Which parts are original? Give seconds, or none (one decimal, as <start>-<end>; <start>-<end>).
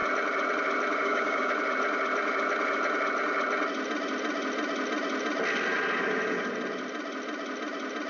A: 0.0-1.0; 1.5-8.1